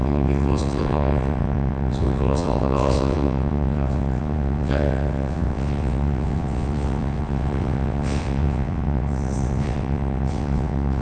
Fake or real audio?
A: fake